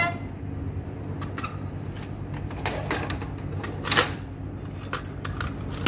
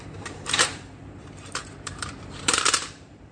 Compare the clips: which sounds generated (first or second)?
second